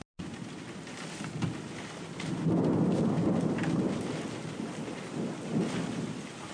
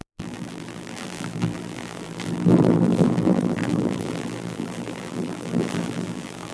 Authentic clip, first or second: first